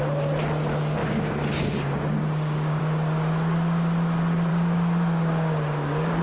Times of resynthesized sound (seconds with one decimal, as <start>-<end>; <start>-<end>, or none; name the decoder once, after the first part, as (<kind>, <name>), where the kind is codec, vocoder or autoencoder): 1.0-2.8 (codec, DAC); 4.5-6.2